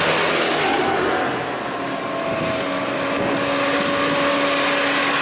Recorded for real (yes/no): yes